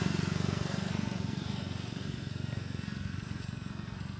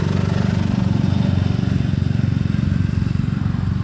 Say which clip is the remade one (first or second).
first